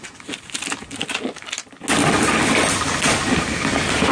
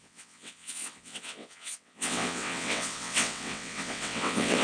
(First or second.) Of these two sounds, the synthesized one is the second